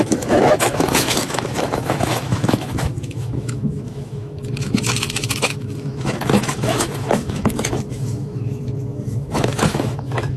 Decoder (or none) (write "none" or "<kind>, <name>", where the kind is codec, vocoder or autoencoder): autoencoder, DAC-VAE